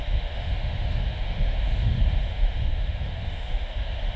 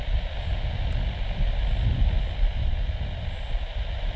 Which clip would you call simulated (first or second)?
first